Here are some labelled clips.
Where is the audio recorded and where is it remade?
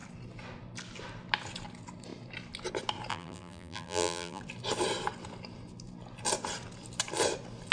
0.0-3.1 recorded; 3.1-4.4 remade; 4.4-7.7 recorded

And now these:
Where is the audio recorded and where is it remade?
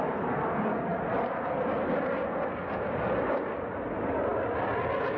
0.0-5.2 recorded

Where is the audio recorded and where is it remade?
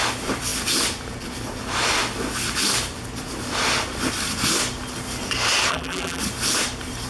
0.0-5.7 recorded; 5.7-6.2 remade; 6.2-7.1 recorded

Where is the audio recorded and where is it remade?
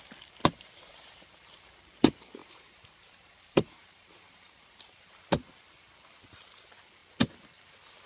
0.0-0.4 recorded; 0.4-1.1 remade; 1.1-2.4 recorded; 2.4-5.2 remade; 5.2-8.1 recorded